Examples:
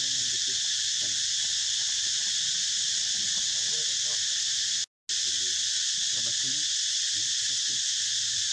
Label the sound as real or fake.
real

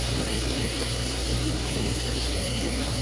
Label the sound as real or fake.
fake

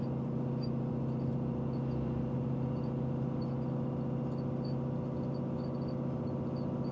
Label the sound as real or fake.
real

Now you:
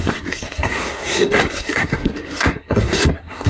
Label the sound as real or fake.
fake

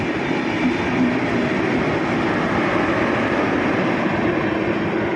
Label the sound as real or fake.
real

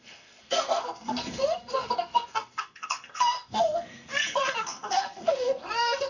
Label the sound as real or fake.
fake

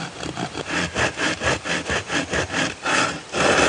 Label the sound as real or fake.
real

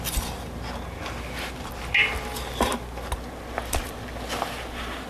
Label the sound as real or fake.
real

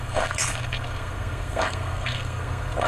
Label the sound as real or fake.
fake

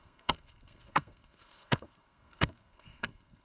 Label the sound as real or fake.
fake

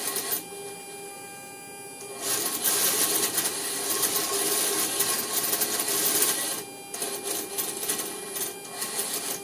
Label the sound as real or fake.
real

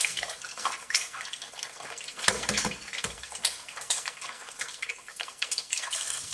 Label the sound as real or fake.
fake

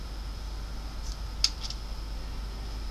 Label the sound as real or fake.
real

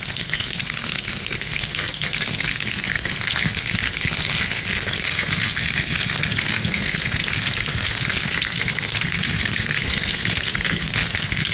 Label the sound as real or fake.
fake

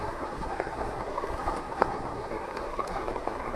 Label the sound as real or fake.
fake